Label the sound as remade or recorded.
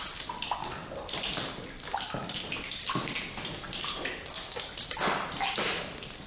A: recorded